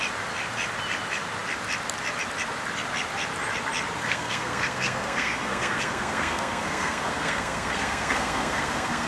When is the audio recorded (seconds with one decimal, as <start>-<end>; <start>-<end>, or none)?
0.0-4.0